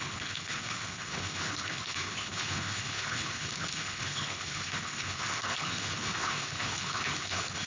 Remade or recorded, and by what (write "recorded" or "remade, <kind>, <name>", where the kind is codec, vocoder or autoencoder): remade, codec, HILCodec